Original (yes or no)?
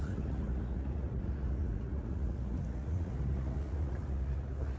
no